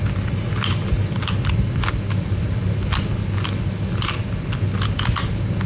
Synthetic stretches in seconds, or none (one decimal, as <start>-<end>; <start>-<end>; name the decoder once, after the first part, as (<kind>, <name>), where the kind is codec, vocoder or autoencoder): none